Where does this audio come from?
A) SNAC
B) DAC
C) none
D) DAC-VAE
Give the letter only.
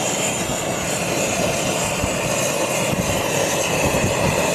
C